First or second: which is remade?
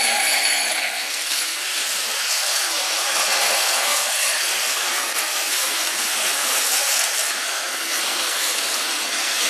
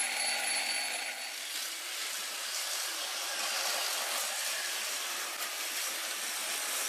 first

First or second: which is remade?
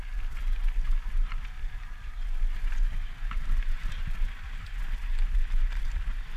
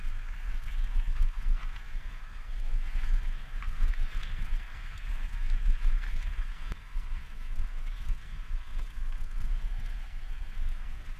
second